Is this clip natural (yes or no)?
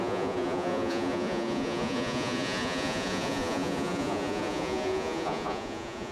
no